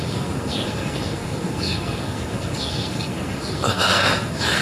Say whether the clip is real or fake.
fake